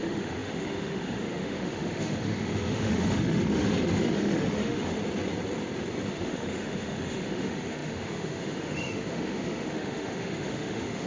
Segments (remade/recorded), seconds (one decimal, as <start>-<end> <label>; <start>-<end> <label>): 0.0-5.0 remade; 5.0-6.1 recorded; 6.1-11.1 remade